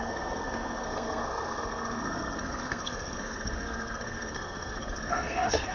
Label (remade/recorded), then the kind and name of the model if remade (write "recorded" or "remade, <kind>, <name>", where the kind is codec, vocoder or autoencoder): remade, codec, SNAC